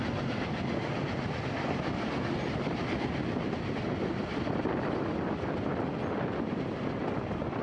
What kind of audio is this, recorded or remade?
recorded